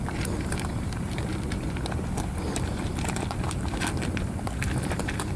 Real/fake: fake